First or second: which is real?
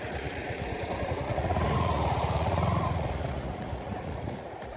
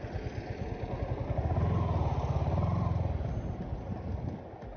second